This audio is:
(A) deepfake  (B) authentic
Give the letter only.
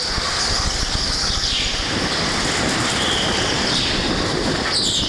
B